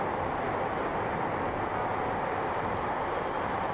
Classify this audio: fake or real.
real